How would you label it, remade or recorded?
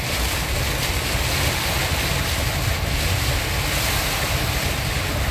recorded